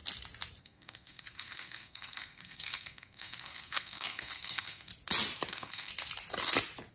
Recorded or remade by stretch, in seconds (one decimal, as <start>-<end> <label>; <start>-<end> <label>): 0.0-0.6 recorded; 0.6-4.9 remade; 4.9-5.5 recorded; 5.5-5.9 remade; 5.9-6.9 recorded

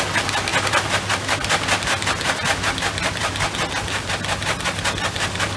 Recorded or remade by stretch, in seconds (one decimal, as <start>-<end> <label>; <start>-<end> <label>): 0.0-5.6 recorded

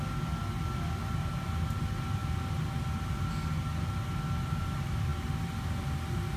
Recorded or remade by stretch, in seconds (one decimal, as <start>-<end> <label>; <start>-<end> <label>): 0.0-6.4 recorded

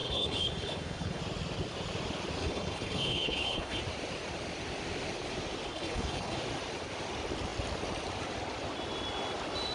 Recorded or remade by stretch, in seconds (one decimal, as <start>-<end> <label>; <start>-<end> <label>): 0.0-1.2 remade; 1.2-2.4 recorded; 2.4-3.8 remade; 3.8-5.7 recorded; 5.7-6.4 remade; 6.4-9.7 recorded